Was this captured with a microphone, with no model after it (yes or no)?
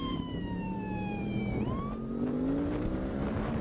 no